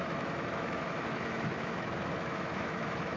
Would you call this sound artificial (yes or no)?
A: yes